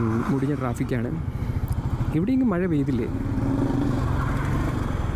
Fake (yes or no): no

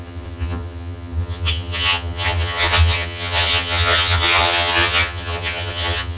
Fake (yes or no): yes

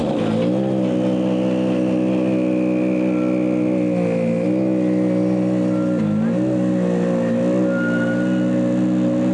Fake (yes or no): no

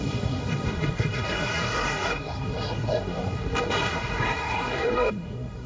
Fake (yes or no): yes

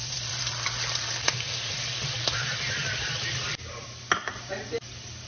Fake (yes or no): yes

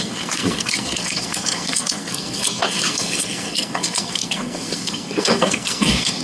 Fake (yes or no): yes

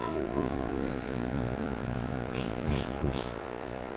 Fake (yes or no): yes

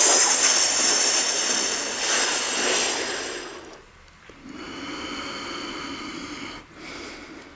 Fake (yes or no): no